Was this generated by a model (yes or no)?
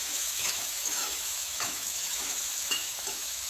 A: yes